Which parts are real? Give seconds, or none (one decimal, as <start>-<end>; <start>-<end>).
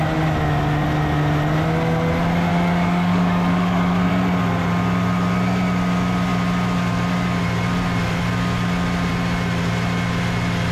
0.0-2.5; 4.1-10.7